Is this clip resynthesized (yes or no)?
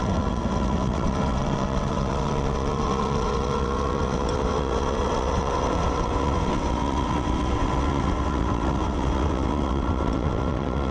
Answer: yes